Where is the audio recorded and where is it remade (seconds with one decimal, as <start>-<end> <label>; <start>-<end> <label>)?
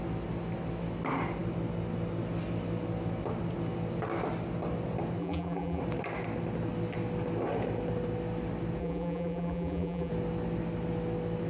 0.0-5.2 recorded; 5.2-5.8 remade; 5.8-8.8 recorded; 8.8-10.1 remade; 10.1-11.5 recorded